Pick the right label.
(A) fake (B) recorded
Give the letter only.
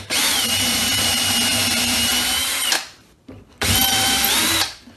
A